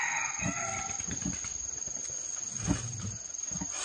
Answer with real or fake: real